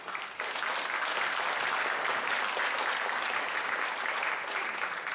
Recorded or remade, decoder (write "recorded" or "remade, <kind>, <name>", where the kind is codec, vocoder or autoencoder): recorded